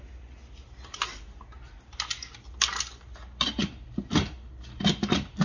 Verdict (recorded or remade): recorded